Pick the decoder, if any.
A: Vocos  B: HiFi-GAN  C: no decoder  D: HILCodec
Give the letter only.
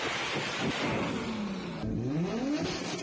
C